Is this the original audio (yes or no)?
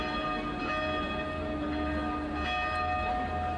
yes